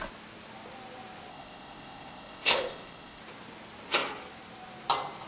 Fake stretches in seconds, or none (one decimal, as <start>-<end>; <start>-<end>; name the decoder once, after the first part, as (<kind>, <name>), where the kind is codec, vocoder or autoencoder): 1.3-3.2 (codec, ZipCodec)